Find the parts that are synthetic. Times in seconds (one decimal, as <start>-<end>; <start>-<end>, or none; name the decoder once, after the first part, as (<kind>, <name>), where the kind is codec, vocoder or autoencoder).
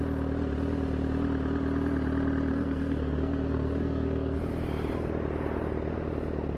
2.5-4.4 (codec, SNAC)